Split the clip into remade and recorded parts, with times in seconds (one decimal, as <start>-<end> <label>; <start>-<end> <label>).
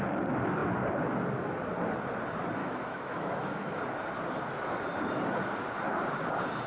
0.0-2.6 recorded; 2.6-3.8 remade; 3.8-6.7 recorded